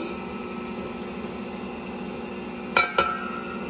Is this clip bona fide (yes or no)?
yes